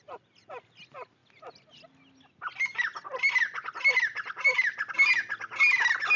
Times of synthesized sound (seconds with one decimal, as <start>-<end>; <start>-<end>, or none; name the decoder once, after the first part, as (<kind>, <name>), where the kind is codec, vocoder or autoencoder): none